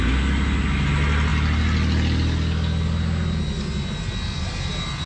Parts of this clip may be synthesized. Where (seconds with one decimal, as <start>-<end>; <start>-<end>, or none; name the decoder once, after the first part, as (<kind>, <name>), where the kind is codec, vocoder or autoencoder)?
none